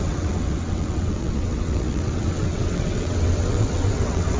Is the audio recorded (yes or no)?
no